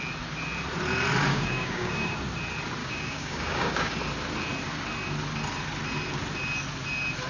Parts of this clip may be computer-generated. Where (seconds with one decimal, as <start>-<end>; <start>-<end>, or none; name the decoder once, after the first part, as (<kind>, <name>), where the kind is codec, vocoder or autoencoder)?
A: 1.3-2.2 (codec, DAC); 2.8-3.9